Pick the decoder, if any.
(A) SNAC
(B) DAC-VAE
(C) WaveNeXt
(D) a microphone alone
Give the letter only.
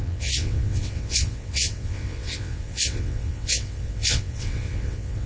C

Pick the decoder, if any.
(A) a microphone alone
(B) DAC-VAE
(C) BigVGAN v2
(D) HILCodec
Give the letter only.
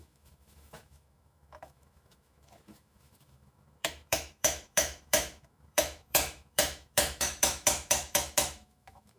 B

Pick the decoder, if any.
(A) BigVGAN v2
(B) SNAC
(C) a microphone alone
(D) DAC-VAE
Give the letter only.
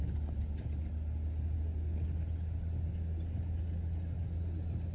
C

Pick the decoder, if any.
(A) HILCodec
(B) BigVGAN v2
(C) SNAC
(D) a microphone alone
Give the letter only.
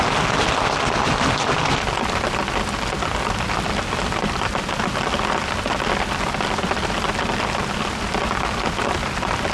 D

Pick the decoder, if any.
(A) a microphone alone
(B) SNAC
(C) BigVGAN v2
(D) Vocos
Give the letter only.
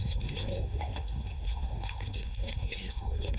B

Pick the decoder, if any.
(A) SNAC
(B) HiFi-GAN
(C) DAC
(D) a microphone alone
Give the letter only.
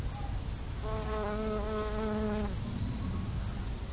D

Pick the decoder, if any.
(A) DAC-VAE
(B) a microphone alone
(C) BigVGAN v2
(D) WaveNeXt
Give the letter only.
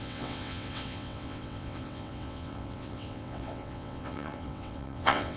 D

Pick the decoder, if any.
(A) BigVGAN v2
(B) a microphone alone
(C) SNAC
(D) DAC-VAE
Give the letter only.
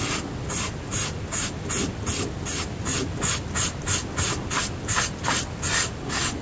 B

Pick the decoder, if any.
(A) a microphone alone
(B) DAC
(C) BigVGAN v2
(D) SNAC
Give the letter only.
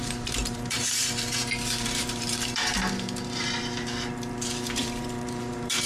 C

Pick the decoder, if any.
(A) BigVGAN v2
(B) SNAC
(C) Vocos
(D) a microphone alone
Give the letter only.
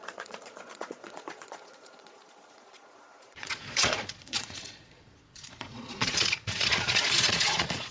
C